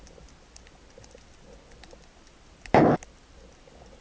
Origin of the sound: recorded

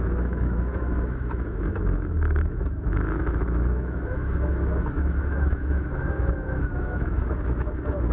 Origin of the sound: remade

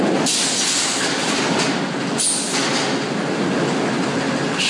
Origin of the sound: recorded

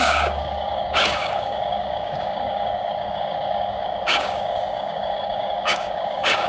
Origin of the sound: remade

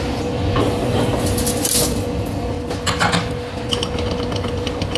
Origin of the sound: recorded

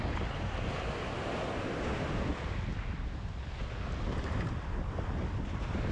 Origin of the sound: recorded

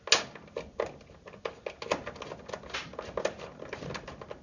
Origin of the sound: recorded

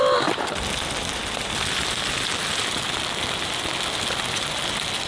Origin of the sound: recorded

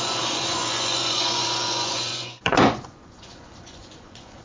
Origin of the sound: remade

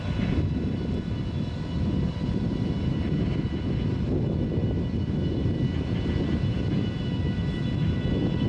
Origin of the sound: recorded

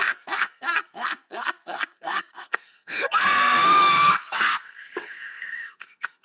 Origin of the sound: remade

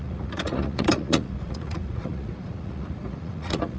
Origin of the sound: remade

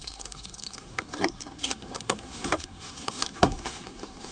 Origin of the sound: remade